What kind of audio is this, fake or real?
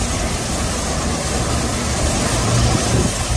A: fake